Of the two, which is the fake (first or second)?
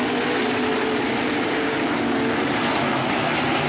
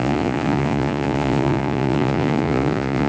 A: second